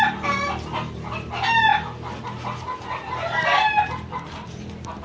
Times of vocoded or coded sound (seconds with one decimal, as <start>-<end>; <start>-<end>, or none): none